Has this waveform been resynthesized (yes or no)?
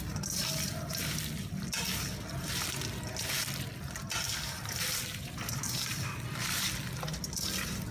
no